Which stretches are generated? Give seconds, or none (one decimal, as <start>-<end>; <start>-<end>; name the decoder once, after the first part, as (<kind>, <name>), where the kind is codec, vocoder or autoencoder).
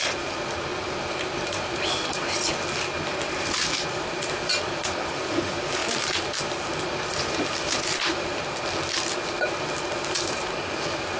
0.7-1.9 (vocoder, BigVGAN v2)